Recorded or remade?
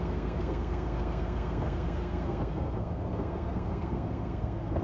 remade